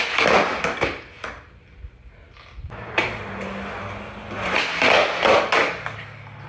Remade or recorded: recorded